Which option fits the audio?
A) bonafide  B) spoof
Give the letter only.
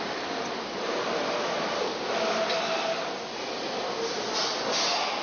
A